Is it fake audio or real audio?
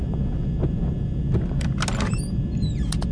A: real